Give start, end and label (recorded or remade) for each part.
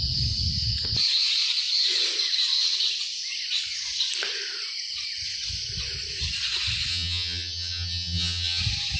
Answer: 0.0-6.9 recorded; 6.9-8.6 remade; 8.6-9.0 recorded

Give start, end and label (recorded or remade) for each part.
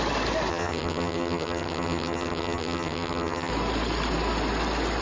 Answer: 0.0-0.5 recorded; 0.5-3.5 remade; 3.5-5.0 recorded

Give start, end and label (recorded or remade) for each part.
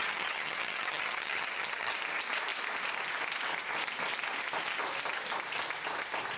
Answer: 0.0-1.9 remade; 1.9-6.4 recorded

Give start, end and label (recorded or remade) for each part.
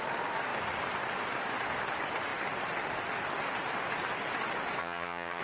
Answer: 0.0-4.8 recorded; 4.8-5.4 remade